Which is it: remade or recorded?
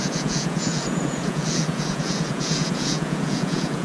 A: remade